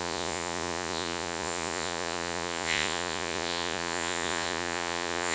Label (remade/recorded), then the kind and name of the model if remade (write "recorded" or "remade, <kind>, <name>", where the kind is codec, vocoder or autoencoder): remade, vocoder, Vocos